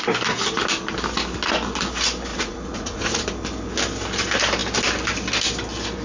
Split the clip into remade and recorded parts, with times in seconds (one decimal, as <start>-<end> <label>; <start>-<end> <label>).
0.0-2.3 recorded; 2.3-3.2 remade; 3.2-6.0 recorded